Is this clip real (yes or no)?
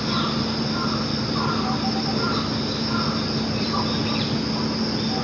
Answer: yes